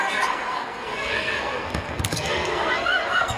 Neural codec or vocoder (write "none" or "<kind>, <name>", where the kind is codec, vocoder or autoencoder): codec, SNAC